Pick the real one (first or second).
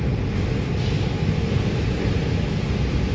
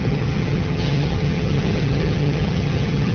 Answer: first